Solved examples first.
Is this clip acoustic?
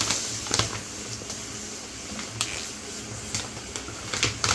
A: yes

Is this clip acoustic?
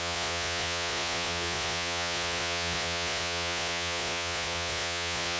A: no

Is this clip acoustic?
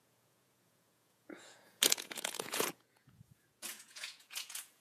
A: no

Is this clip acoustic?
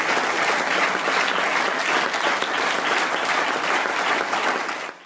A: yes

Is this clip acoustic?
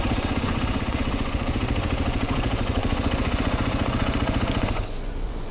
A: no